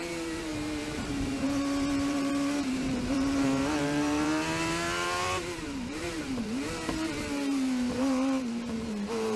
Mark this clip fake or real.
fake